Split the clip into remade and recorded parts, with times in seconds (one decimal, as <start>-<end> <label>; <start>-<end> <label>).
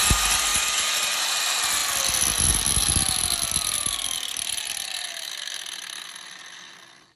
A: 0.0-7.2 recorded